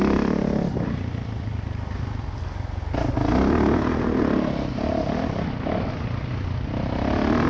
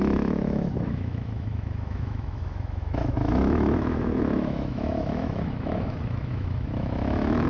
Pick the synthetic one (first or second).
second